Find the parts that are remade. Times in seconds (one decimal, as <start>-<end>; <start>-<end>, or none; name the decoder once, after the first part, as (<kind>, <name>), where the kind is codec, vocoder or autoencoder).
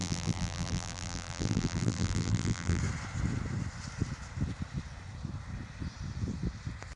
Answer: 0.0-2.8 (vocoder, BigVGAN v2)